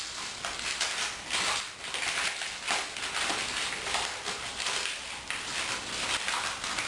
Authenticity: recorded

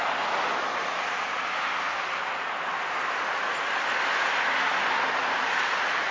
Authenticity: recorded